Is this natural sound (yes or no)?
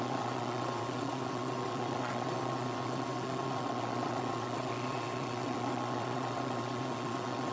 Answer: no